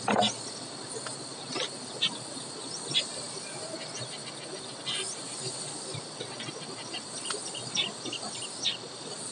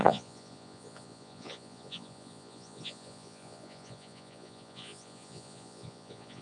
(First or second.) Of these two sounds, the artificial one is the second